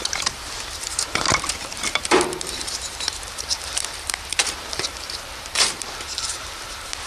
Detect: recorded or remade remade